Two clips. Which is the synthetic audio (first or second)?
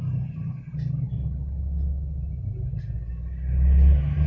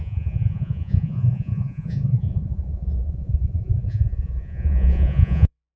second